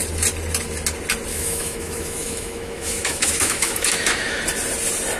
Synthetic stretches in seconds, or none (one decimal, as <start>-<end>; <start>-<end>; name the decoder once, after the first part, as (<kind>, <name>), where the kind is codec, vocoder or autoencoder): 1.3-4.4 (autoencoder, DAC-VAE)